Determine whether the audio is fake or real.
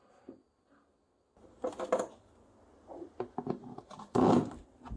real